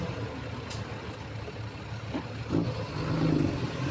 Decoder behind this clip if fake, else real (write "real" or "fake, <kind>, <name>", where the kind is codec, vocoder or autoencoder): real